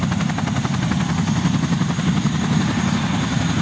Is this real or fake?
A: real